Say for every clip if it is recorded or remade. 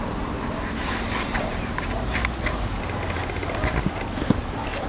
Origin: recorded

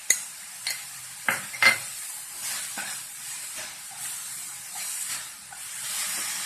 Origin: remade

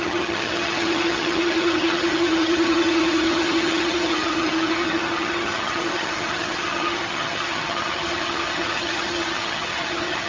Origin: remade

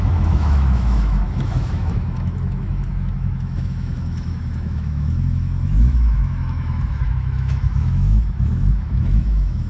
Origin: remade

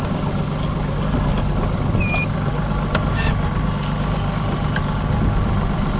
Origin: recorded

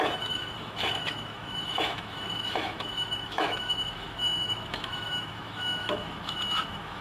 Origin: remade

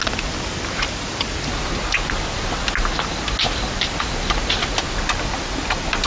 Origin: recorded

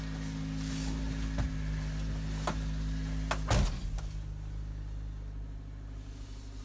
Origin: recorded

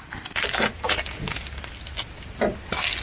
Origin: recorded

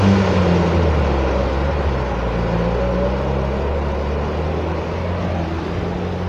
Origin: recorded